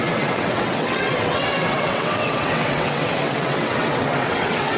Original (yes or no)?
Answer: no